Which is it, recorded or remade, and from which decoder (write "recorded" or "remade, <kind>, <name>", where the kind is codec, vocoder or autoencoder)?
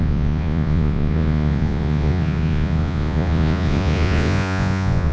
remade, vocoder, Vocos